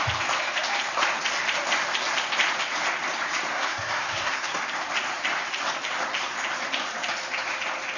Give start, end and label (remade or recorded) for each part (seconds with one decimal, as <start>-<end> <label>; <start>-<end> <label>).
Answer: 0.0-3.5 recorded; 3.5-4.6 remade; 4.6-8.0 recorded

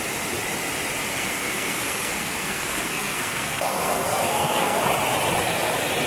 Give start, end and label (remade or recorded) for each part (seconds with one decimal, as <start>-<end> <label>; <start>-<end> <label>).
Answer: 0.0-1.1 recorded; 1.1-4.8 remade; 4.8-6.1 recorded

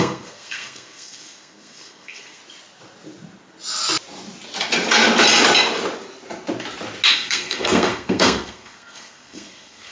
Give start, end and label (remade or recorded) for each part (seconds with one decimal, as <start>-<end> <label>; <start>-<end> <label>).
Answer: 0.0-2.4 remade; 2.4-7.1 recorded; 7.1-9.9 remade

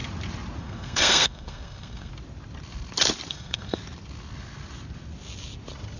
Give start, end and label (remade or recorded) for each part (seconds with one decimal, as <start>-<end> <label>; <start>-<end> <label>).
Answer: 0.0-0.6 recorded; 0.6-2.1 remade; 2.1-3.3 recorded; 3.3-3.8 remade; 3.8-6.0 recorded

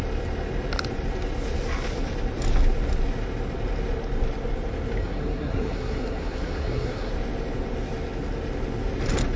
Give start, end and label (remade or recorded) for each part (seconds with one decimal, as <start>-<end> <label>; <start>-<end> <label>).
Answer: 0.0-5.0 recorded; 5.0-7.1 remade; 7.1-9.4 recorded

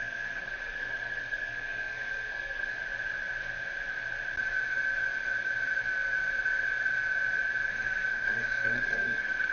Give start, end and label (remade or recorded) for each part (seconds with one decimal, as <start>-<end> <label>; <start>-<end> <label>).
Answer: 0.0-2.8 remade; 2.8-7.7 recorded; 7.7-9.5 remade

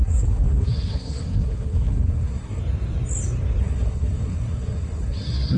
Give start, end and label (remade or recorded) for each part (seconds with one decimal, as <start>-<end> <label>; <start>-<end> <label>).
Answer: 0.0-2.6 remade; 2.6-3.6 recorded; 3.6-5.6 remade